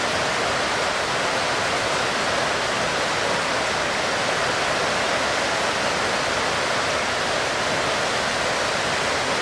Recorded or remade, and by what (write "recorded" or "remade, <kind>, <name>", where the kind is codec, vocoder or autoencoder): recorded